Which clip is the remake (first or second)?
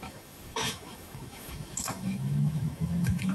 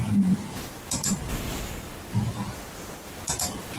first